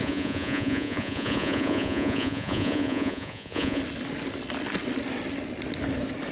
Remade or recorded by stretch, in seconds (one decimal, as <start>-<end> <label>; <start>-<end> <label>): 0.0-3.8 remade; 3.8-6.3 recorded